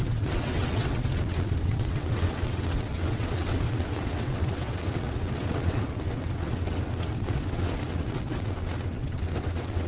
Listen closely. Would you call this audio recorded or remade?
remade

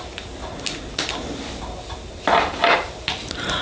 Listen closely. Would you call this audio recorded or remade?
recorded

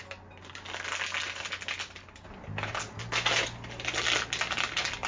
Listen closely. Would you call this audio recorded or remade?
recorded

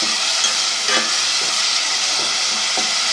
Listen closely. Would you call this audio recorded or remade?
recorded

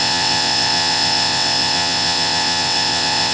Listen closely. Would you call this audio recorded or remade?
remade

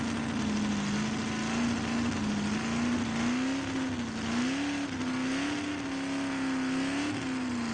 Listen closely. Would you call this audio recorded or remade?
recorded